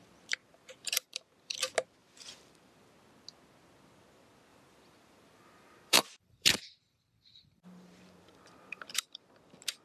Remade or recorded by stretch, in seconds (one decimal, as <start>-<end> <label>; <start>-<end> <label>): 0.0-0.4 recorded; 0.4-1.6 remade; 1.6-2.0 recorded; 2.0-2.9 remade; 2.9-4.5 recorded; 4.5-9.2 remade; 9.2-9.8 recorded

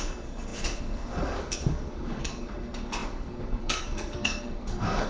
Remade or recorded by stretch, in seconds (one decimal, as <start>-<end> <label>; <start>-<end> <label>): 0.0-5.1 remade

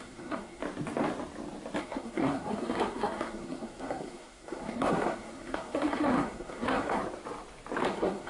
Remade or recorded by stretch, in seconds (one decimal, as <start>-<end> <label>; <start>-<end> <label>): 0.0-0.6 remade; 0.6-1.8 recorded; 1.8-7.0 remade; 7.0-7.9 recorded; 7.9-8.3 remade

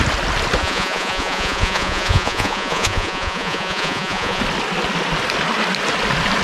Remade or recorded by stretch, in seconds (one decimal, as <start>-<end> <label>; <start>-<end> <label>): 0.0-0.6 recorded; 0.6-4.4 remade; 4.4-6.4 recorded

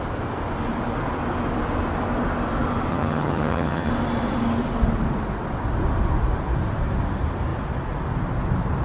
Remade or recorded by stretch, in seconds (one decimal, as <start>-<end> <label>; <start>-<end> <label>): 0.0-2.9 recorded; 2.9-3.9 remade; 3.9-8.8 recorded

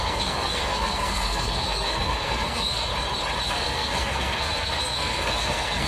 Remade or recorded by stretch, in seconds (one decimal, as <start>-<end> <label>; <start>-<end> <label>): 0.0-2.9 remade; 2.9-3.5 recorded; 3.5-5.9 remade

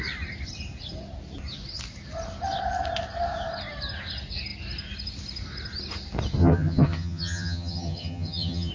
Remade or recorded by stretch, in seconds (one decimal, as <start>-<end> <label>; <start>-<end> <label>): 0.0-6.4 recorded; 6.4-8.7 remade

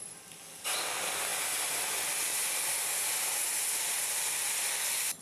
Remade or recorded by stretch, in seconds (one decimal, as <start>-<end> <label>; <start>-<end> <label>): 0.0-5.2 recorded